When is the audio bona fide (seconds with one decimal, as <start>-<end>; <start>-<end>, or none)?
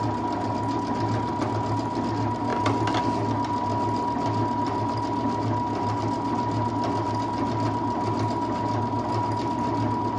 0.0-10.2